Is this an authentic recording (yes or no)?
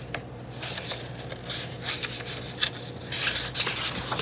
yes